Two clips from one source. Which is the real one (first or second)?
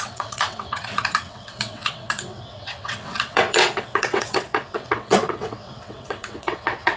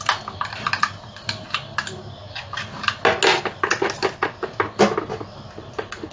second